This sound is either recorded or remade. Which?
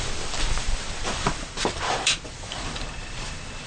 remade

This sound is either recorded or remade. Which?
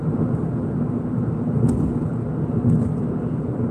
recorded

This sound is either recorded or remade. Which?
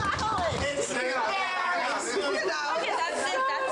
recorded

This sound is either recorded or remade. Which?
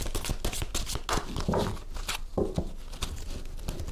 recorded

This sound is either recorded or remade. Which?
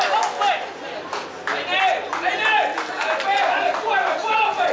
recorded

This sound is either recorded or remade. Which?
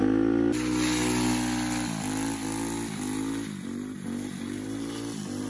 recorded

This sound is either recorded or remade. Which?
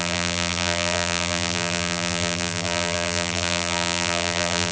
remade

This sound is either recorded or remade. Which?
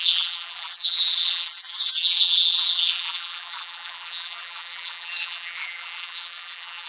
remade